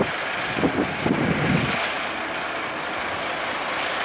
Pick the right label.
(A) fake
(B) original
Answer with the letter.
B